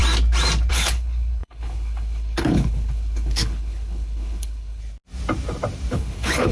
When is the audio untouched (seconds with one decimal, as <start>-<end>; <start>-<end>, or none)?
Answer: 0.0-0.7; 4.8-5.9